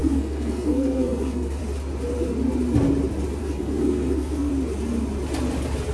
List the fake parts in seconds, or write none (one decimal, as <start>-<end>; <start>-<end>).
0.0-1.6; 3.4-4.5